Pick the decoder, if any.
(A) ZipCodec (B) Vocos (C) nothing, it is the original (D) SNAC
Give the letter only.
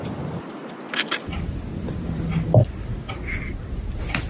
C